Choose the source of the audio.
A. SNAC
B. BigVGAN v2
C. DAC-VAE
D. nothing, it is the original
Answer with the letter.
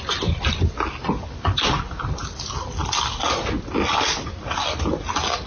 D